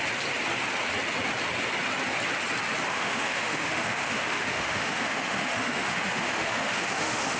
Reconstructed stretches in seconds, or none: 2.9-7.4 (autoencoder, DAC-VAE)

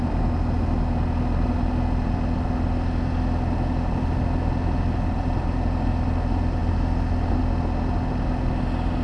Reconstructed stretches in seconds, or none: none

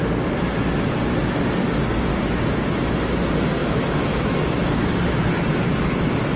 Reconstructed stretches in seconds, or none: 2.1-2.8 (autoencoder, DAC-VAE); 3.6-4.7

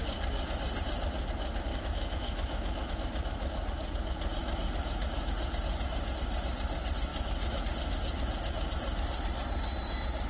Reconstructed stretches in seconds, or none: 1.7-2.9 (autoencoder, DAC-VAE); 4.4-5.3; 7.1-7.6